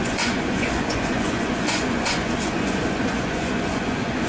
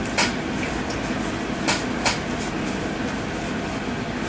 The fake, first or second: first